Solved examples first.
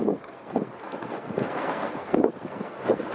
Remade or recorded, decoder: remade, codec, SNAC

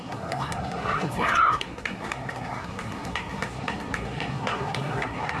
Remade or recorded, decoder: remade, codec, SNAC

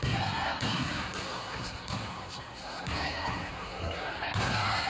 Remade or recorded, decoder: remade, codec, SNAC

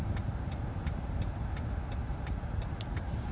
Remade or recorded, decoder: recorded